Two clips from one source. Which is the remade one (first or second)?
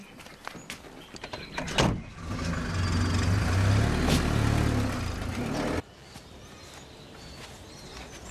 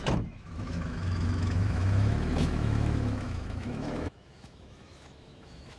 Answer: second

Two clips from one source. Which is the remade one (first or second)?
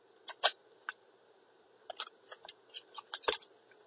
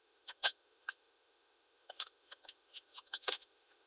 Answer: second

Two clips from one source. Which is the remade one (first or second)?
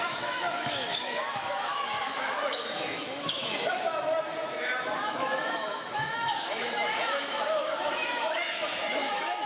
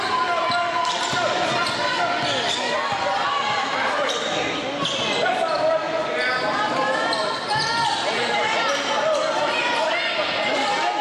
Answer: first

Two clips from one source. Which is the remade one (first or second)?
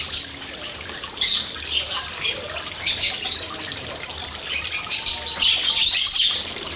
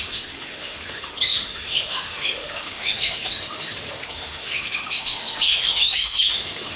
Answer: second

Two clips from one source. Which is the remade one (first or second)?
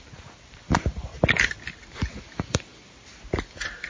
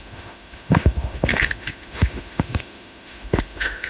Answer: second